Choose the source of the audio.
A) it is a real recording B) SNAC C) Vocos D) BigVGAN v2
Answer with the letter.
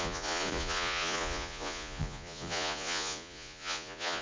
C